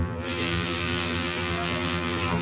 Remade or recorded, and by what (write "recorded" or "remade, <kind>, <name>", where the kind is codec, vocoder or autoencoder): remade, vocoder, BigVGAN v2